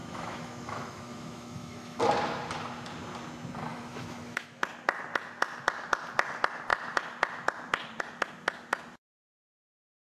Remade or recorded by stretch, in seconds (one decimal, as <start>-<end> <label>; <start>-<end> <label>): 0.0-2.0 remade; 2.0-3.7 recorded; 3.7-4.6 remade; 4.6-10.1 recorded